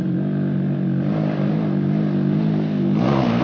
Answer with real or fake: real